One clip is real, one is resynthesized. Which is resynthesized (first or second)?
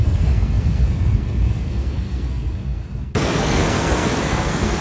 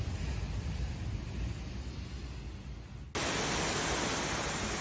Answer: first